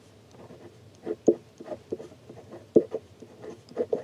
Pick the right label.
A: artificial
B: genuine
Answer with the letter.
A